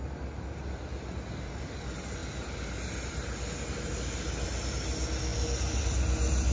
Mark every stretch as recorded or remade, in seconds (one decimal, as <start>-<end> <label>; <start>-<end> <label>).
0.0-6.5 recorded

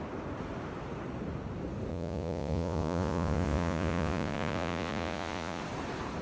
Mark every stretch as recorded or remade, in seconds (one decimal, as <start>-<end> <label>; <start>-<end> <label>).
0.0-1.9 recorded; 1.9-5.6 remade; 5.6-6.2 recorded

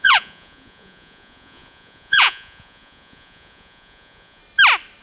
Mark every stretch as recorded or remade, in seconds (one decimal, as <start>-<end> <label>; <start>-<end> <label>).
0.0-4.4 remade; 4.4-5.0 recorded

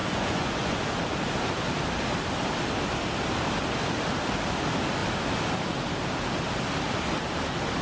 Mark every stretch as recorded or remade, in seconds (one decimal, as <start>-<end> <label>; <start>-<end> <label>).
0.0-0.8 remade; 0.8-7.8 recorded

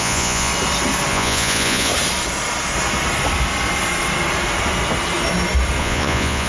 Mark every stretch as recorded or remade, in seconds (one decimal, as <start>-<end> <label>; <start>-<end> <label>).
0.0-0.5 remade; 0.5-1.1 recorded; 1.1-1.9 remade; 1.9-5.8 recorded; 5.8-6.5 remade

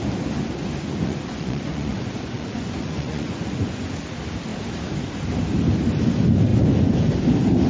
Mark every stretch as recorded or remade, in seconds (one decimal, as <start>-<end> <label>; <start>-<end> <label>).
0.0-0.6 recorded; 0.6-3.9 remade; 3.9-7.7 recorded